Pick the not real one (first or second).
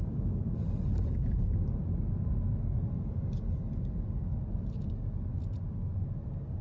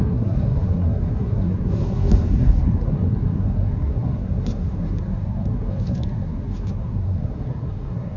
second